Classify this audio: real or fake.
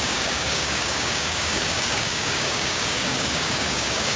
fake